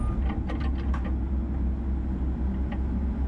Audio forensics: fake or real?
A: real